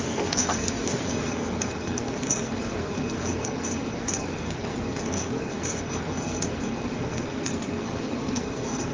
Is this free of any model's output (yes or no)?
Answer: no